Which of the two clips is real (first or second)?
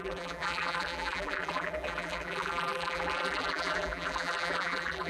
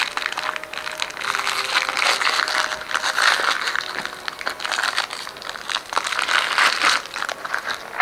second